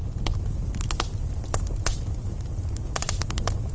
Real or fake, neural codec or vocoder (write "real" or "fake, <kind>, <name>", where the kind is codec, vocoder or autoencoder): real